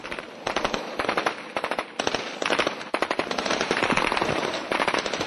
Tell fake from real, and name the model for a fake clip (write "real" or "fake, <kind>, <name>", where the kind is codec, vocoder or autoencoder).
fake, vocoder, BigVGAN v2